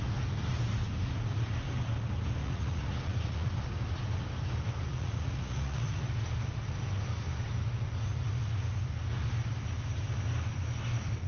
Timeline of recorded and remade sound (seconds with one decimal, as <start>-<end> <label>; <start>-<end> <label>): 0.0-2.4 recorded; 2.4-3.5 remade; 3.5-4.9 recorded; 4.9-6.0 remade; 6.0-11.3 recorded